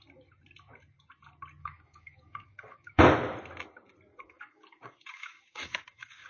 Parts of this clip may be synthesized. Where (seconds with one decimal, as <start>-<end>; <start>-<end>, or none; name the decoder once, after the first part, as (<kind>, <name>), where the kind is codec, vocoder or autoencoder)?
1.6-3.0 (codec, DAC); 4.1-6.3